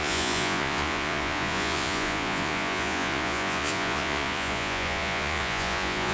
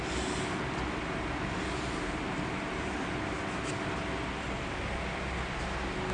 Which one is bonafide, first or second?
second